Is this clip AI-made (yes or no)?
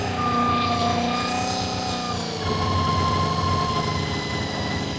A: no